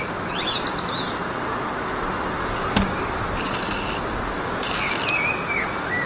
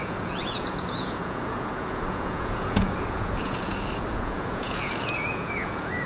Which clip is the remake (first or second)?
second